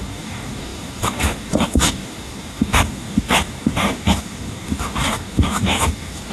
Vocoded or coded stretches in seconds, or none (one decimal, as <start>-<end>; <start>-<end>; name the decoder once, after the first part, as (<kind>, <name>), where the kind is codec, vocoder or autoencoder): 0.0-6.3 (codec, DAC)